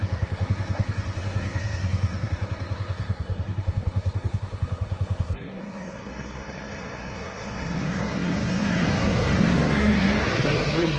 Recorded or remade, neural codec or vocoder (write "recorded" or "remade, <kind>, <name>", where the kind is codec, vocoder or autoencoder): remade, codec, SNAC